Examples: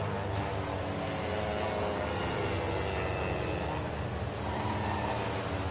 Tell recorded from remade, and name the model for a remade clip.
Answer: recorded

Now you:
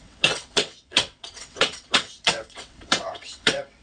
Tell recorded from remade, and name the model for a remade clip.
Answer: remade, vocoder, WaveNeXt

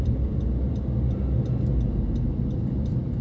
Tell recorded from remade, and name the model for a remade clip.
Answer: recorded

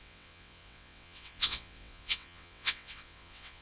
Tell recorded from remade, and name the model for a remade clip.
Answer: remade, vocoder, WaveNeXt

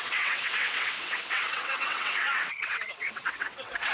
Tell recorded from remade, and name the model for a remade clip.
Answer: remade, vocoder, WaveNeXt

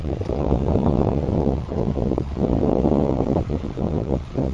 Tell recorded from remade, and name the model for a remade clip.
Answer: remade, vocoder, WaveNeXt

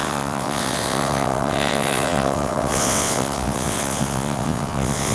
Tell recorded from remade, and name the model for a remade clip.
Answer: remade, vocoder, WaveNeXt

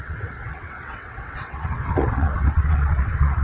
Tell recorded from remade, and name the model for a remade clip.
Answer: remade, vocoder, WaveNeXt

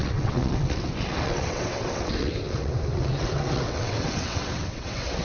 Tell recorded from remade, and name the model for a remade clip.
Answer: remade, vocoder, WaveNeXt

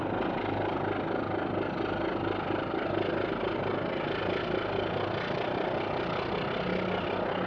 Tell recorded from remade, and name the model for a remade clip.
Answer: recorded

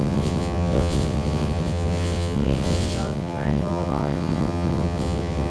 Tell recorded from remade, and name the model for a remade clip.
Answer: remade, vocoder, WaveNeXt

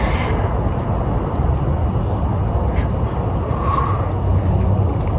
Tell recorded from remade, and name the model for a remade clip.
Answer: recorded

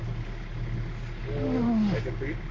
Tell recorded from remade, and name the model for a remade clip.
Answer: recorded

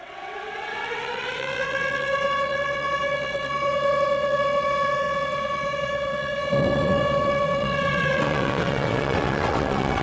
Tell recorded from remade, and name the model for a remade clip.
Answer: remade, vocoder, WaveNeXt